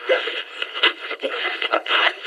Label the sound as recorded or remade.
remade